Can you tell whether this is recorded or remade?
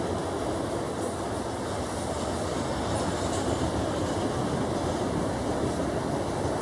recorded